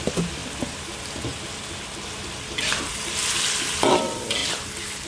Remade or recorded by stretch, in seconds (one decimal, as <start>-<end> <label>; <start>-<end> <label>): 0.0-0.4 remade; 0.4-2.2 recorded; 2.2-3.2 remade; 3.2-3.9 recorded; 3.9-4.4 remade; 4.4-5.1 recorded